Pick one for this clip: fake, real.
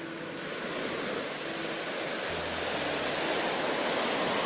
real